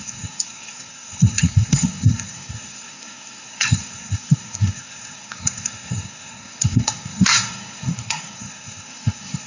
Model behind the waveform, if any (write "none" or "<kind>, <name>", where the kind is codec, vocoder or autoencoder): codec, SNAC